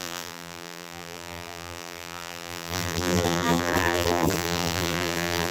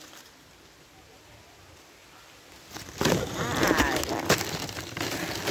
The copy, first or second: first